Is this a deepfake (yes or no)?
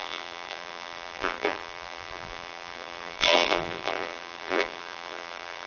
yes